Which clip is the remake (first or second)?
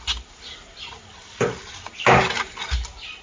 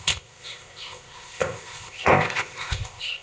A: second